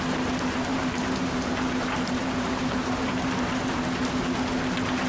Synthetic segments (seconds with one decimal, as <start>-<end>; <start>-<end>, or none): 0.7-3.8